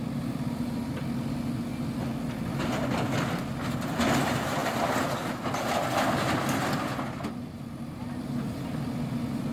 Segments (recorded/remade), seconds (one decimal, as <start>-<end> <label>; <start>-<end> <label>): 0.0-9.5 recorded